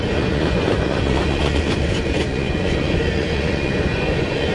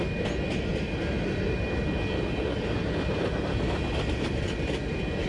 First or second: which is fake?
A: first